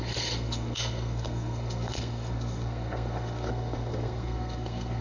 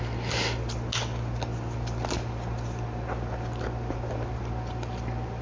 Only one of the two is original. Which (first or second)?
second